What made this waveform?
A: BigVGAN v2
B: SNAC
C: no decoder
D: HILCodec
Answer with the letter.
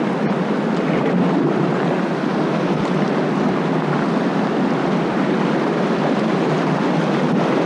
C